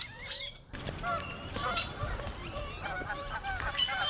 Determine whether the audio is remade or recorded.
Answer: remade